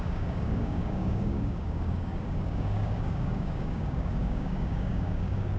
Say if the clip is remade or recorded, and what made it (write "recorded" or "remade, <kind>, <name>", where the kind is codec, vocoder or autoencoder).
remade, codec, DAC